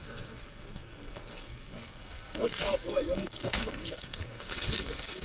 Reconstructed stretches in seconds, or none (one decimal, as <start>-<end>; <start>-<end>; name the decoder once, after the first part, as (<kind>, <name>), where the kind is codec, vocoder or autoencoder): 0.0-5.2 (codec, SNAC)